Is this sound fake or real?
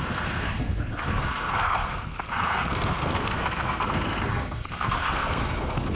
fake